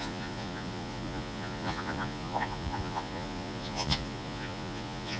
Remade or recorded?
remade